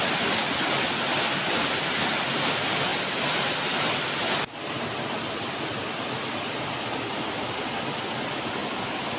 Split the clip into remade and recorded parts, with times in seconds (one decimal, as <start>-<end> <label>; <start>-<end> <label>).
0.0-9.2 recorded